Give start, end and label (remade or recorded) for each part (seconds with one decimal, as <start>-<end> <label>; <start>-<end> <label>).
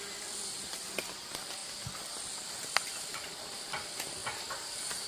0.0-1.6 remade; 1.6-3.7 recorded; 3.7-4.2 remade; 4.2-5.1 recorded